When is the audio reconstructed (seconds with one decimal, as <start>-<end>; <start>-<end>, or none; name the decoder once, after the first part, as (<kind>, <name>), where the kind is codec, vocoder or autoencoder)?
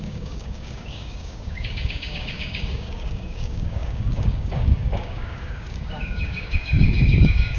0.0-7.6 (codec, DAC)